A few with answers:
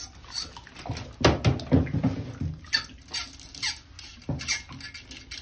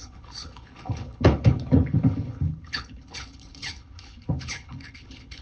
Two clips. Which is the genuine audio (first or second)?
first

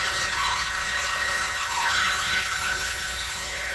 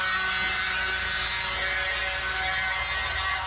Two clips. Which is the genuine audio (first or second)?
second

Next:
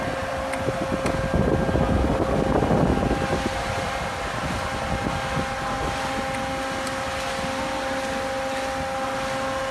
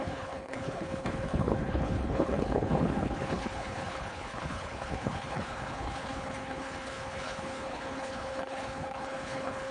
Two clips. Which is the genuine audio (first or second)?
first